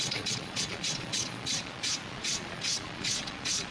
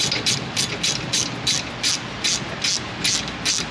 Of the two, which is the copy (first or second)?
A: first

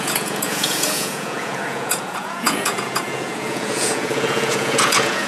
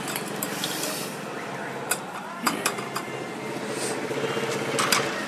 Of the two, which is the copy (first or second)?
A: first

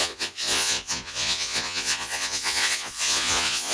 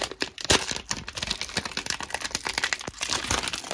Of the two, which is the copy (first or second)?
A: first